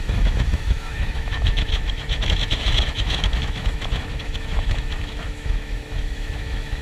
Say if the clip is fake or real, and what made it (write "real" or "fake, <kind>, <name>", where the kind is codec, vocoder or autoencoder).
fake, autoencoder, DAC-VAE